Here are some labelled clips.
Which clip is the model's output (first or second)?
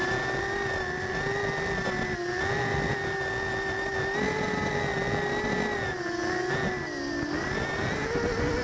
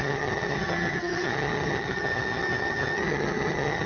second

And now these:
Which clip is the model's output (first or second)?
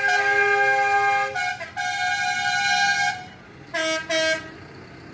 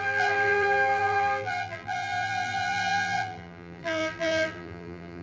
second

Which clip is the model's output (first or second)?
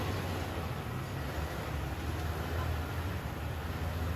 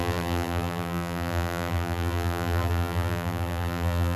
second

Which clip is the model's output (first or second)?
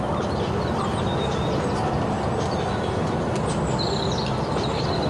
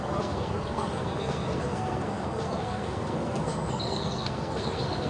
second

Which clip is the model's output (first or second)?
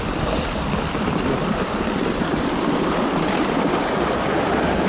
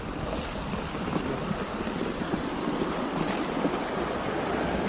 first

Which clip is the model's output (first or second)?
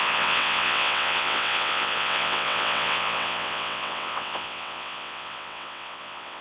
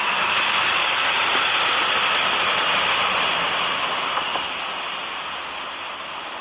first